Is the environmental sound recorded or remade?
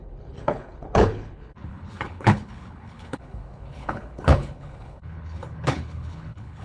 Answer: remade